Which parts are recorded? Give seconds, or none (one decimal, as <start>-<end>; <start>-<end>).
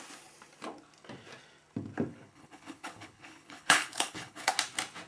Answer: 0.0-2.1; 4.5-5.1